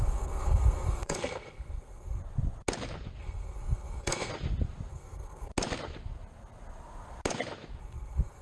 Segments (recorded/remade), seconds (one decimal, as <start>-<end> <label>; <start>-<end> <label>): 0.0-2.2 remade; 2.2-3.2 recorded; 3.2-4.3 remade; 4.3-4.9 recorded; 4.9-5.5 remade; 5.5-7.8 recorded; 7.8-8.4 remade

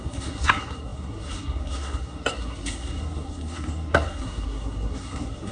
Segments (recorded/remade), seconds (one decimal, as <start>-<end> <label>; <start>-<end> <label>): 0.0-5.5 remade

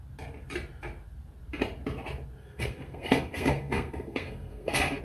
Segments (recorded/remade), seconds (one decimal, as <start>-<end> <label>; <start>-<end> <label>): 0.0-2.4 recorded; 2.4-5.0 remade

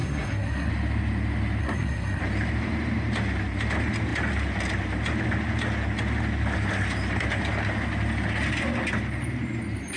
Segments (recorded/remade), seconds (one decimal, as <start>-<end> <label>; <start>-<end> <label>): 0.0-0.7 remade; 0.7-1.6 recorded; 1.6-2.2 remade; 2.2-10.0 recorded

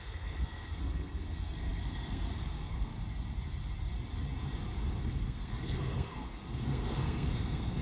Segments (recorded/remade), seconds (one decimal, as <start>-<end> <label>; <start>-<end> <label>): 0.0-2.9 remade; 2.9-5.0 recorded; 5.0-7.8 remade